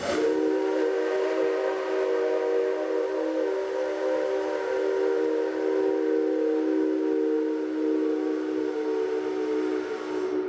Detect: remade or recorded recorded